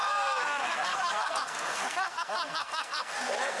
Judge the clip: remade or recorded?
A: remade